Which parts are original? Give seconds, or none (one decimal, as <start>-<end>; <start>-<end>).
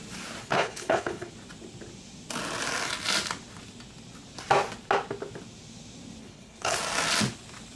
0.0-0.4; 1.3-6.2; 6.8-7.8